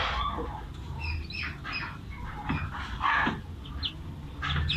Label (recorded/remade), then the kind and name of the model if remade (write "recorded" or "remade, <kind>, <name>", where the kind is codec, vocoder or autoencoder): recorded